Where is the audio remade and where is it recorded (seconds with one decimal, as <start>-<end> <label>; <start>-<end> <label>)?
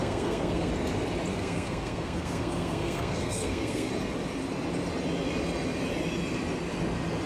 0.0-0.7 remade; 0.7-1.3 recorded; 1.3-3.9 remade; 3.9-7.3 recorded